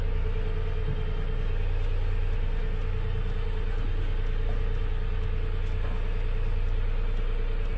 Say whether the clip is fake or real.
real